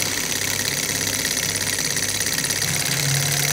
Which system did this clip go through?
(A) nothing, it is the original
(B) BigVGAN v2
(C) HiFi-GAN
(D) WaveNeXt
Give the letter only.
A